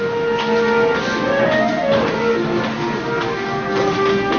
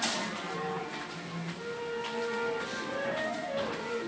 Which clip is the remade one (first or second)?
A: second